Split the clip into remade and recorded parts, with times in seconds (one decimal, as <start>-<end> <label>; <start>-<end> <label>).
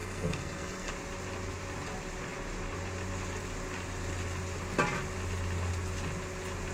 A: 0.0-0.9 remade; 0.9-6.7 recorded